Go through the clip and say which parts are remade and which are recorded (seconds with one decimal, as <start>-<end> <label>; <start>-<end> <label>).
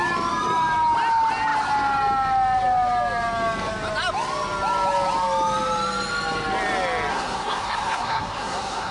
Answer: 0.0-7.1 recorded; 7.1-8.9 remade